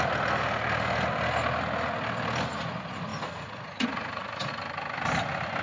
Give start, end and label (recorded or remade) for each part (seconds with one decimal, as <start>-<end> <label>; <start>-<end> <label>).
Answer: 0.0-3.1 recorded; 3.1-4.5 remade; 4.5-5.6 recorded